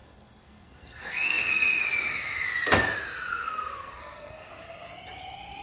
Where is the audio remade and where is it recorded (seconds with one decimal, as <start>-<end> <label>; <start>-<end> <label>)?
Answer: 0.0-1.8 remade; 1.8-3.3 recorded; 3.3-4.5 remade; 4.5-5.6 recorded